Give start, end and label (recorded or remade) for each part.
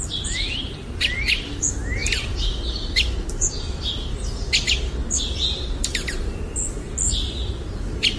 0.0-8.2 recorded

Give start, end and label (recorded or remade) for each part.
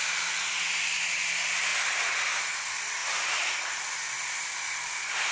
0.0-3.0 recorded; 3.0-3.5 remade; 3.5-5.3 recorded